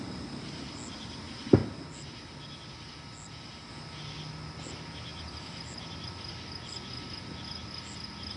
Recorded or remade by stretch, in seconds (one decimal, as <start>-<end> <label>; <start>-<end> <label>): 0.0-8.4 recorded